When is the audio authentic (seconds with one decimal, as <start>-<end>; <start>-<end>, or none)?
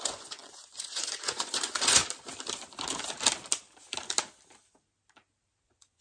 2.0-5.6